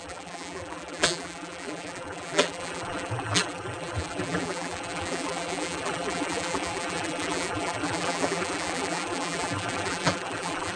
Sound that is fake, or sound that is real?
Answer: fake